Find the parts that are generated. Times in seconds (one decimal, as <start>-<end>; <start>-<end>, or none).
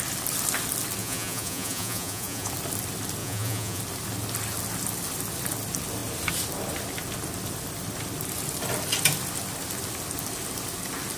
1.0-2.5; 3.2-3.8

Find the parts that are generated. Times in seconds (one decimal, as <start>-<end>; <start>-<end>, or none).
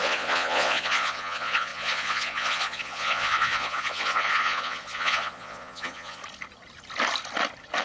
0.0-6.2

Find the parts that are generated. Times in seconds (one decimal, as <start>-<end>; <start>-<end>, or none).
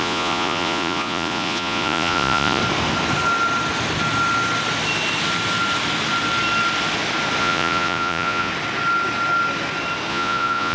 0.0-2.6; 7.4-8.5; 10.1-10.7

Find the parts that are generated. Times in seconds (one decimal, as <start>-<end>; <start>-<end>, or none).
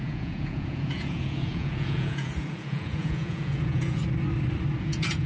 0.0-4.0; 4.8-5.3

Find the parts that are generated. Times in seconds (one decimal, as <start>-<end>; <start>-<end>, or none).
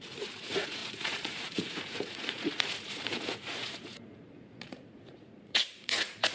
0.0-6.3